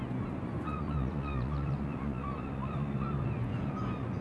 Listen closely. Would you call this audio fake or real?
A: fake